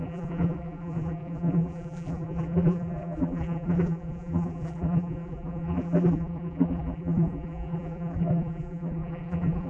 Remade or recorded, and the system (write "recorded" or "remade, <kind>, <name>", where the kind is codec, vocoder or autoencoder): remade, vocoder, BigVGAN v2